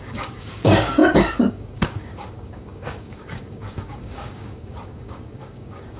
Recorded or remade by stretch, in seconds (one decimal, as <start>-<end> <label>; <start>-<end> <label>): 0.0-6.0 remade